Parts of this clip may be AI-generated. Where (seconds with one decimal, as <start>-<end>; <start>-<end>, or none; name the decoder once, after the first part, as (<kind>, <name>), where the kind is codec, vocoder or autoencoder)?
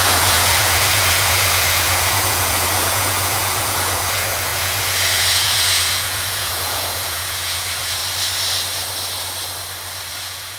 0.0-8.0 (vocoder, Vocos); 10.1-10.6